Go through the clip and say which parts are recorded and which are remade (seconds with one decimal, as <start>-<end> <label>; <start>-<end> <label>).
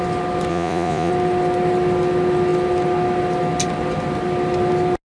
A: 0.0-0.5 recorded; 0.5-1.1 remade; 1.1-5.0 recorded